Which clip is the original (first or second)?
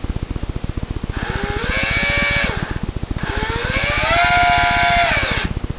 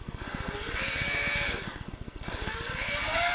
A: first